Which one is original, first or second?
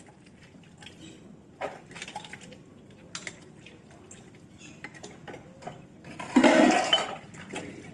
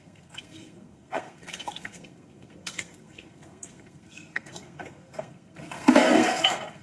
first